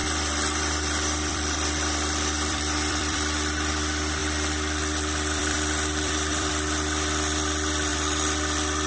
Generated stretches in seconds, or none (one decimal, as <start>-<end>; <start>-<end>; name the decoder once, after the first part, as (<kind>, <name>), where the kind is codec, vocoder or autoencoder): 0.0-3.7 (vocoder, BigVGAN v2); 4.2-6.5; 7.9-8.9